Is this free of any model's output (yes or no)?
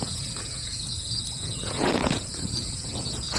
no